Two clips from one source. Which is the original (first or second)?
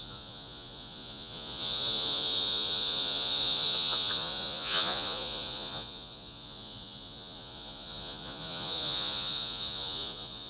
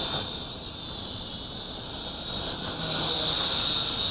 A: second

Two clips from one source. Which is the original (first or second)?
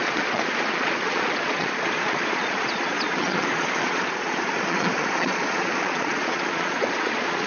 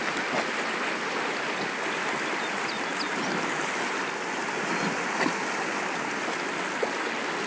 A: second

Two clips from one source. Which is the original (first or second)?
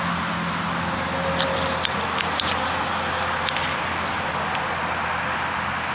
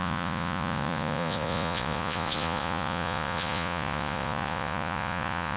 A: first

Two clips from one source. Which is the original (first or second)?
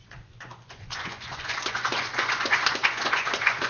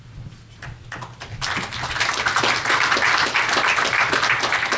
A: second